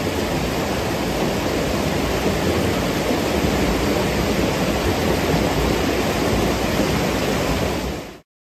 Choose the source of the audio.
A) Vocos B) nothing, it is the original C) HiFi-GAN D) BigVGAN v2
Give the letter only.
B